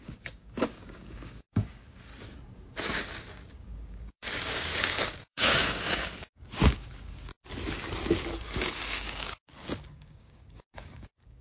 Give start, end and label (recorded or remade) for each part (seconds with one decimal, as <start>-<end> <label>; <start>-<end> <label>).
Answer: 0.0-2.1 remade; 2.1-2.9 recorded; 2.9-7.3 remade; 7.3-8.3 recorded; 8.3-11.4 remade